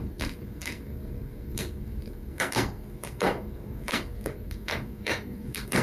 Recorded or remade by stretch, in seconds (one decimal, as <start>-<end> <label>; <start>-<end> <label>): 0.0-5.8 remade